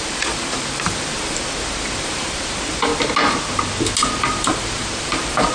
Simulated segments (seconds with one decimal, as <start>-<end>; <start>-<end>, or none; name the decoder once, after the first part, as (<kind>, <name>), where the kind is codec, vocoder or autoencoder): 0.0-2.9 (vocoder, BigVGAN v2); 4.2-5.5